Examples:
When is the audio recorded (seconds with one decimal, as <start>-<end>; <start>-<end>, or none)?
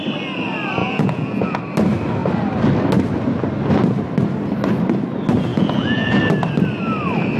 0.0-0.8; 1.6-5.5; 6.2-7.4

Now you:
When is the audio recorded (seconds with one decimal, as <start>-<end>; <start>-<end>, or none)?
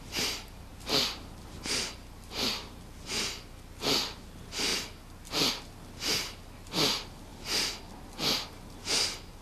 0.0-9.4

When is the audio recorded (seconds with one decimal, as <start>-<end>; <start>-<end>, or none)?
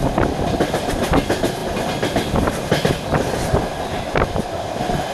0.0-5.1